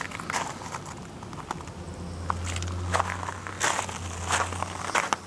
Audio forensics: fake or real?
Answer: real